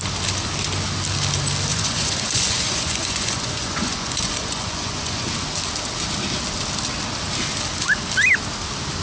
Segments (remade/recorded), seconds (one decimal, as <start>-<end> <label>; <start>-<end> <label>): 0.0-1.7 recorded; 1.7-5.3 remade; 5.3-9.0 recorded